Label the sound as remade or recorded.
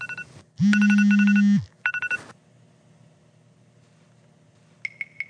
recorded